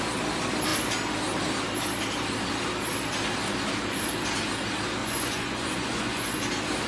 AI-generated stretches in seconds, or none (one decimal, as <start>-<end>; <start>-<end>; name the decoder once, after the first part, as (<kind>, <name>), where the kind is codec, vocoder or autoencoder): 5.0-6.4 (vocoder, Vocos)